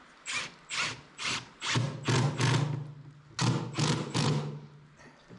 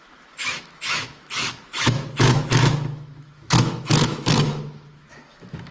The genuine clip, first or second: first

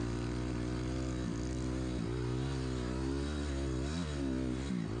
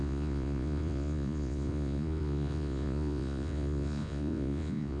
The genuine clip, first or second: first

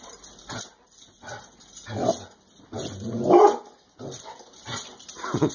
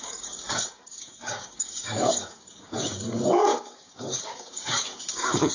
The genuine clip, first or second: first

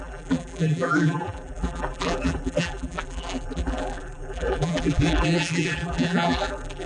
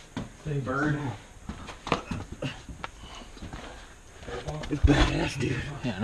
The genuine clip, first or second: second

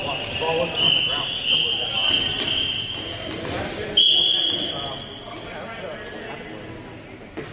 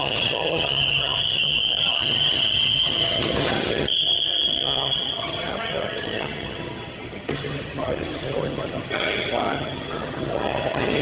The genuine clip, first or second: first